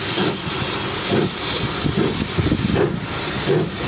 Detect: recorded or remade recorded